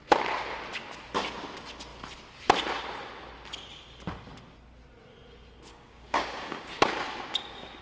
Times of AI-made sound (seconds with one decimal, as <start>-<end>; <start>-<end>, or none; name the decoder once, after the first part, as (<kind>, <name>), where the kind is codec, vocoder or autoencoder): 5.7-6.9 (codec, DAC)